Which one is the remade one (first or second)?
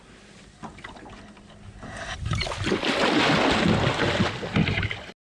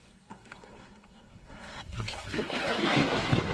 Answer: second